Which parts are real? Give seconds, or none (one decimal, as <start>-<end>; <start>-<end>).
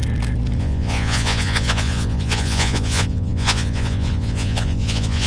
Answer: 0.0-0.6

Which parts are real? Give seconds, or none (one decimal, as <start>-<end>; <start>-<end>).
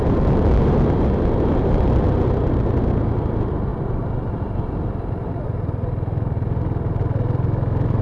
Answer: 0.0-8.0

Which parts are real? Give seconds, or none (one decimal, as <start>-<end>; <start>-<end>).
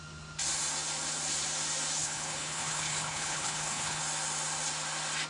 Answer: 0.0-2.0; 4.0-5.3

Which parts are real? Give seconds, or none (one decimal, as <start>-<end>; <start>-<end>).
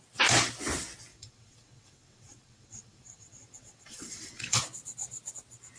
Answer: 0.0-1.1; 4.6-5.8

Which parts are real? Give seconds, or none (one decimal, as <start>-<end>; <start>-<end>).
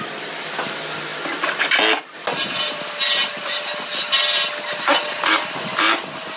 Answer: 0.0-6.4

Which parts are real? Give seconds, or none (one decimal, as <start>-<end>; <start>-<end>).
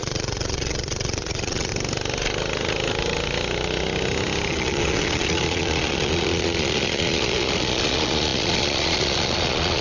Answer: 1.7-4.5